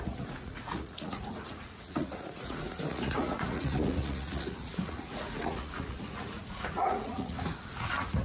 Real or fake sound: fake